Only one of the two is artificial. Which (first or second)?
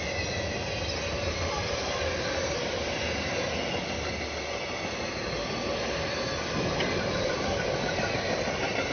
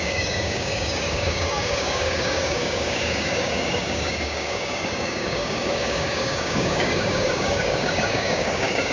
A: second